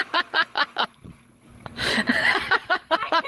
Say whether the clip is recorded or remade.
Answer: remade